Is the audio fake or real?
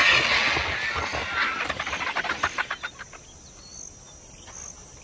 real